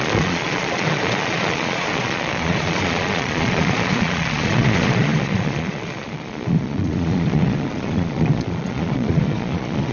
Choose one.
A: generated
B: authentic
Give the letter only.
A